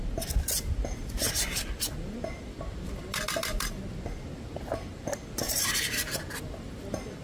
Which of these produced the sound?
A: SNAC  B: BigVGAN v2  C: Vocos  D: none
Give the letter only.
D